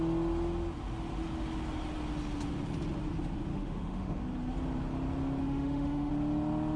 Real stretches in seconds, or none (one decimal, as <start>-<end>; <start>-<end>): 0.0-3.5; 4.2-5.4; 6.1-6.8